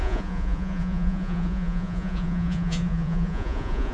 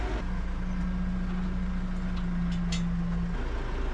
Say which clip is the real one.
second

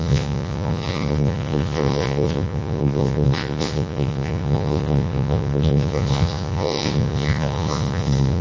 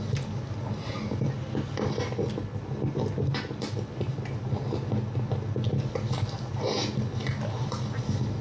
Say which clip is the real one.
second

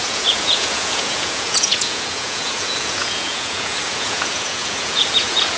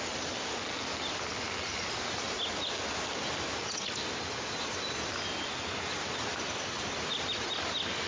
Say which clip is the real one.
second